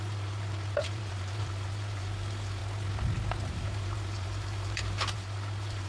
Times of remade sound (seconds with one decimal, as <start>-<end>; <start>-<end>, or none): 0.0-2.6; 3.5-5.9